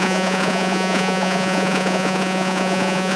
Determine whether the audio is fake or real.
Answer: fake